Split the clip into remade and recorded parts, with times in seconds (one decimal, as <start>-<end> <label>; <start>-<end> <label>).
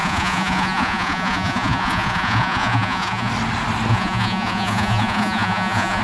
0.0-3.3 remade; 3.3-3.9 recorded; 3.9-6.0 remade